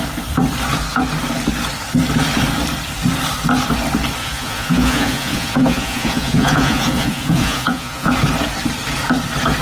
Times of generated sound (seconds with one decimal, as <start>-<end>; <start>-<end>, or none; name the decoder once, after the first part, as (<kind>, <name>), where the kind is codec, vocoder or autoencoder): 4.2-8.1 (vocoder, Vocos)